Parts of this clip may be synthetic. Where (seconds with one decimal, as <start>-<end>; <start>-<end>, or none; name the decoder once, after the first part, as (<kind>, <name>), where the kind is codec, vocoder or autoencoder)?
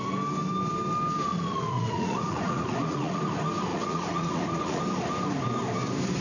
1.3-3.2 (vocoder, Vocos); 3.7-4.8